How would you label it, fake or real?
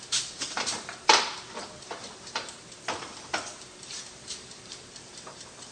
fake